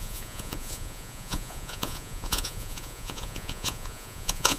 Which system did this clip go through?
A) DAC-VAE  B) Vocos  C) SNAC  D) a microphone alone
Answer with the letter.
B